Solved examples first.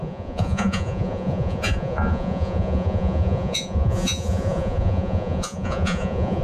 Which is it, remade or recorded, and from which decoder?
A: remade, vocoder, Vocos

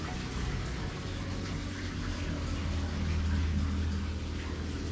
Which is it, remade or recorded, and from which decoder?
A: recorded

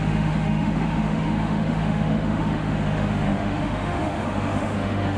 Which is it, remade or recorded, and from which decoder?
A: remade, autoencoder, DAC-VAE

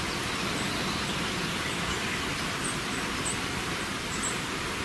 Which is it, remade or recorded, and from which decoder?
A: recorded